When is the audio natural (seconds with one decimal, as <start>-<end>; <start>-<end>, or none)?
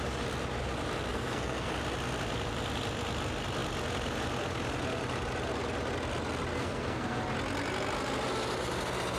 0.0-1.1; 1.7-6.5; 7.2-9.2